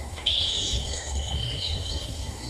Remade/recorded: remade